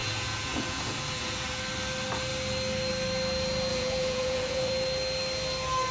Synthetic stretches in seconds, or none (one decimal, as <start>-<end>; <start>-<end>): 0.0-1.6; 3.7-4.7